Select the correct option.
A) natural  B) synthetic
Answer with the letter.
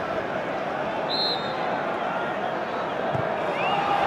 A